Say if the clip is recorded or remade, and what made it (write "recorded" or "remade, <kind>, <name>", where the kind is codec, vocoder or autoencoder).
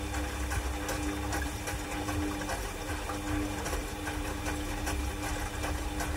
recorded